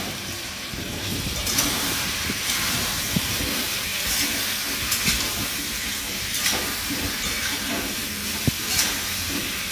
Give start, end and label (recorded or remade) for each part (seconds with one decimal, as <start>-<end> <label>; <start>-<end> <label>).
0.0-3.9 remade; 3.9-6.2 recorded; 6.2-8.0 remade; 8.0-8.6 recorded; 8.6-9.7 remade